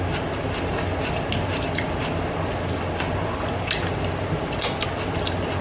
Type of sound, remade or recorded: recorded